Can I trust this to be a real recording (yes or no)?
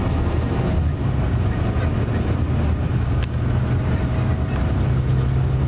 yes